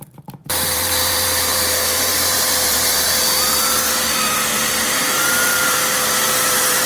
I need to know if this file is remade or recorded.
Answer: remade